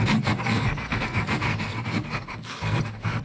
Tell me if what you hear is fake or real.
fake